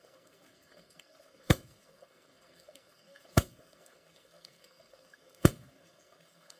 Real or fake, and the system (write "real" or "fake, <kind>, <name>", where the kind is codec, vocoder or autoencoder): fake, codec, SNAC